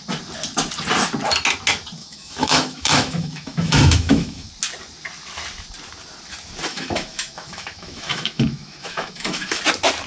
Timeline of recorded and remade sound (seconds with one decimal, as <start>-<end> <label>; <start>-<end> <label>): 0.0-2.0 recorded; 2.0-4.5 remade; 4.5-6.7 recorded; 6.7-9.6 remade; 9.6-10.1 recorded